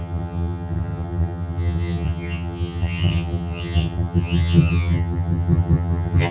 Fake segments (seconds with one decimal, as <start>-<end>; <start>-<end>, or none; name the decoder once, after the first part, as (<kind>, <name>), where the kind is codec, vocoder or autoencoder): 0.0-6.3 (vocoder, HiFi-GAN)